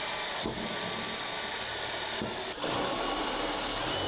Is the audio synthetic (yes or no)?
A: no